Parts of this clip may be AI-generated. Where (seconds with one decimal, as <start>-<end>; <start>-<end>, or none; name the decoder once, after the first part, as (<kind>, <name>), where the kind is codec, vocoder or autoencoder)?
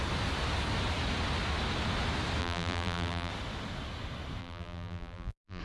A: 2.4-3.3 (vocoder, BigVGAN v2); 4.4-5.6